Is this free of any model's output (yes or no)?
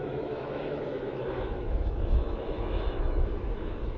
no